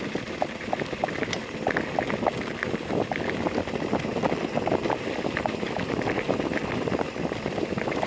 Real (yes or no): yes